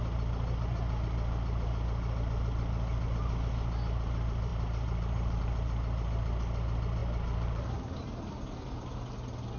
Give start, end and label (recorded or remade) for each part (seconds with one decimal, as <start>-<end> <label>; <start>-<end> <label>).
0.0-4.5 recorded; 4.5-5.4 remade; 5.4-7.0 recorded; 7.0-9.1 remade; 9.1-9.6 recorded